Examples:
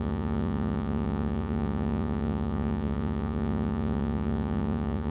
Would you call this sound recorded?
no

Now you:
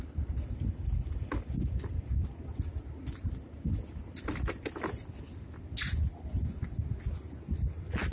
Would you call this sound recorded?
yes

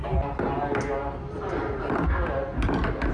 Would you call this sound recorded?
yes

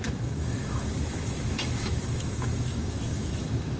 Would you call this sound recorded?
no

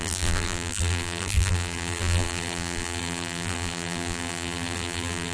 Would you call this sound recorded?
no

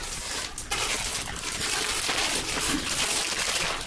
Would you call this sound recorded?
yes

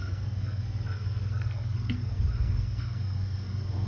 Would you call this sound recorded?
no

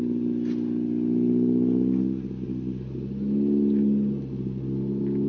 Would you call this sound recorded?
yes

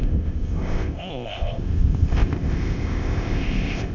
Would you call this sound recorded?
no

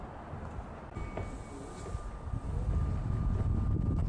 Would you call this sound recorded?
yes